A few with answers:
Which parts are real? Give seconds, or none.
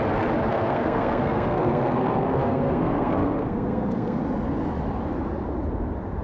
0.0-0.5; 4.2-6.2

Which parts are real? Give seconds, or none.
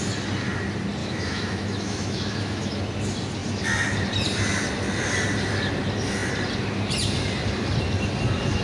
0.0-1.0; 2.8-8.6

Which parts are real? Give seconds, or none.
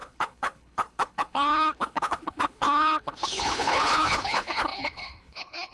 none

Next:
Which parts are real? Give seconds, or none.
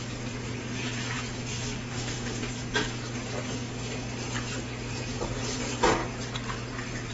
0.0-1.9; 2.4-7.1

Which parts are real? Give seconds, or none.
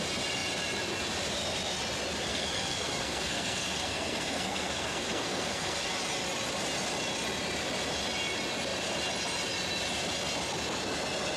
0.0-2.3; 5.9-11.4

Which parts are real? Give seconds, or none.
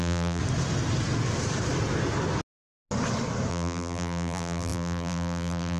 0.4-3.5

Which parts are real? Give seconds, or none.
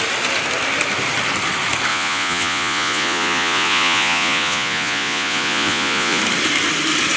0.0-1.9; 6.2-7.2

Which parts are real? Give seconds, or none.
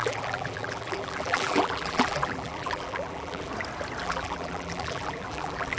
3.5-4.0